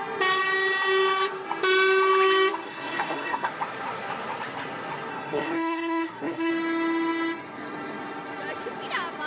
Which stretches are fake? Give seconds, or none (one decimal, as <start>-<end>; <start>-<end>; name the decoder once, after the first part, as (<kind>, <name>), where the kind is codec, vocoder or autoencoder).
2.6-3.5 (codec, SNAC); 5.1-6.5